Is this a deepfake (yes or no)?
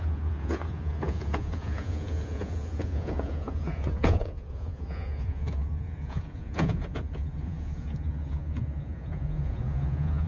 yes